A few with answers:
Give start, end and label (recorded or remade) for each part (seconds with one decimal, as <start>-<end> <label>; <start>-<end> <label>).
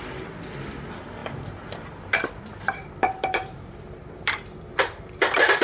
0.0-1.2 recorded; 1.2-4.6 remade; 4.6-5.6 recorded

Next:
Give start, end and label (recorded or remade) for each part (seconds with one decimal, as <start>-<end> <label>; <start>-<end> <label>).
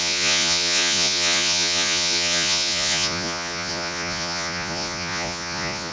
0.0-5.9 remade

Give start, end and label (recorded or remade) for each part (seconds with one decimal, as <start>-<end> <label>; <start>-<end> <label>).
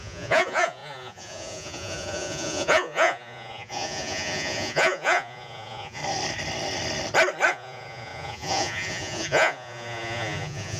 0.0-6.0 remade; 6.0-7.5 recorded; 7.5-10.8 remade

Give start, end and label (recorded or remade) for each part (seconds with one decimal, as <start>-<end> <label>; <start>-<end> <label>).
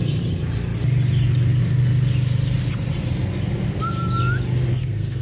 0.0-4.7 recorded; 4.7-5.2 remade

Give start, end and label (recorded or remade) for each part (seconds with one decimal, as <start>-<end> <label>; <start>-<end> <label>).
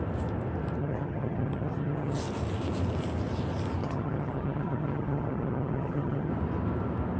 0.0-0.8 recorded; 0.8-2.2 remade; 2.2-3.8 recorded; 3.8-6.3 remade; 6.3-7.2 recorded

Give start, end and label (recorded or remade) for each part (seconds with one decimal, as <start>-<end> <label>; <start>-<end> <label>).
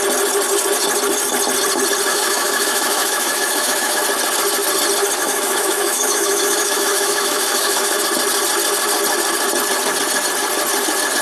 0.0-2.1 recorded; 2.1-4.0 remade; 4.0-5.2 recorded; 5.2-8.0 remade; 8.0-11.2 recorded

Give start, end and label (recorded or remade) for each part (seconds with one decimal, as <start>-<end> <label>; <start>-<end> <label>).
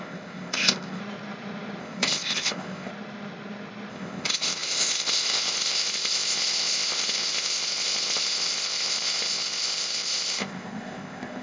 0.0-1.0 remade; 1.0-1.8 recorded; 1.8-2.9 remade; 2.9-3.9 recorded; 3.9-11.4 remade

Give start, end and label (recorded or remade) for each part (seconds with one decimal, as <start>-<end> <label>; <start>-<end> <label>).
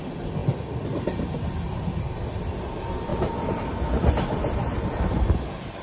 0.0-3.1 recorded; 3.1-5.2 remade; 5.2-5.8 recorded